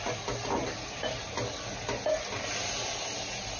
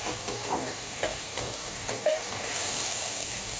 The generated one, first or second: second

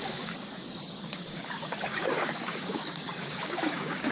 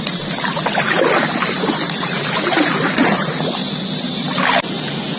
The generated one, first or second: first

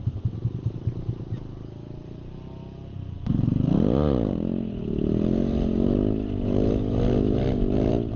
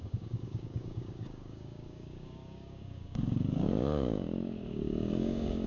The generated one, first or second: second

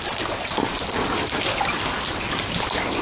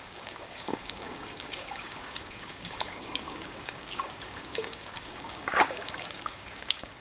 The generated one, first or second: second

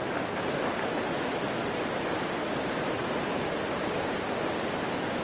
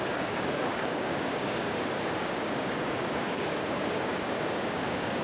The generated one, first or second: second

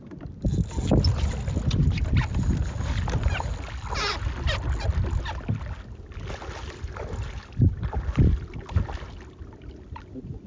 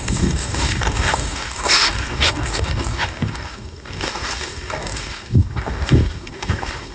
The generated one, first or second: second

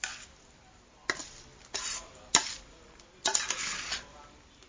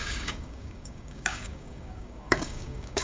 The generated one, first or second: second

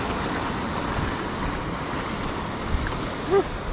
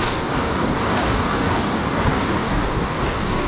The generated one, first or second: second